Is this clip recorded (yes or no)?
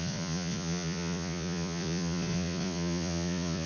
no